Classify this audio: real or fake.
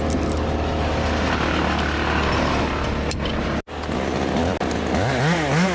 real